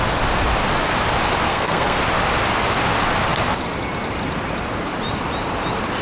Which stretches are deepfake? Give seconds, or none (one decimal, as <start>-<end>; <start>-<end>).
1.5-2.0